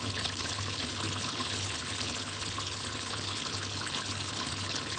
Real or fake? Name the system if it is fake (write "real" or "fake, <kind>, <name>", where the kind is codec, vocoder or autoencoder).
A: fake, codec, HILCodec